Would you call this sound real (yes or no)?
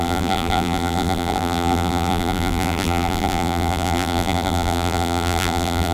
no